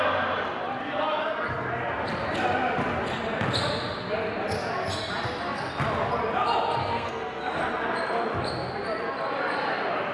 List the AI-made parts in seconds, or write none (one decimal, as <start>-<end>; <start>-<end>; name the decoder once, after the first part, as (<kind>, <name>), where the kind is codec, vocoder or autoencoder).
6.8-7.6 (codec, SNAC)